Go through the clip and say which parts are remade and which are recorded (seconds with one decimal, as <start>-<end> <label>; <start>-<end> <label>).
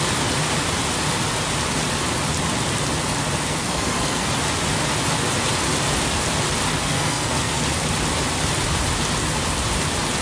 0.0-3.5 recorded; 3.5-4.3 remade; 4.3-6.8 recorded; 6.8-7.6 remade; 7.6-10.2 recorded